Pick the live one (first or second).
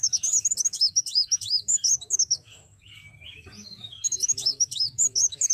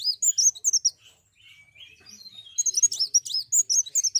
second